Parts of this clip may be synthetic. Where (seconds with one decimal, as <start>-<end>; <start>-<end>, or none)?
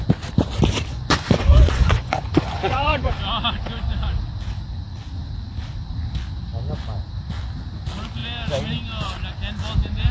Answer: 0.9-3.2